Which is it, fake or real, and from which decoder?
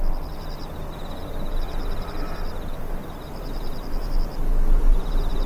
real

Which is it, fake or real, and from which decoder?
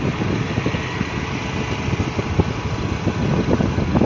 real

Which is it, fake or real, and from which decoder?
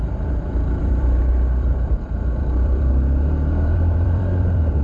fake, vocoder, BigVGAN v2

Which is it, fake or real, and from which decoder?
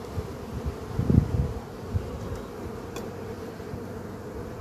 real